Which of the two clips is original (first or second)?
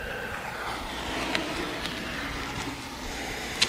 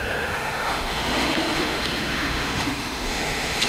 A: first